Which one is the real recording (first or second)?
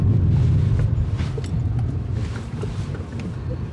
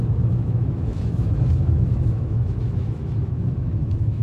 first